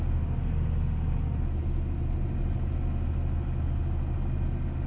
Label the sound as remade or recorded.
recorded